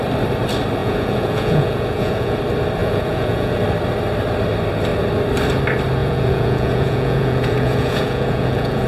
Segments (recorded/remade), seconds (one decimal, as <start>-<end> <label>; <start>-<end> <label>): 0.0-0.8 recorded; 0.8-2.4 remade; 2.4-2.8 recorded; 2.8-3.6 remade; 3.6-6.0 recorded; 6.0-8.9 remade